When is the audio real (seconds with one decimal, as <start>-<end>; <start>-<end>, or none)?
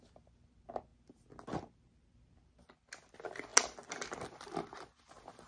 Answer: 0.0-5.5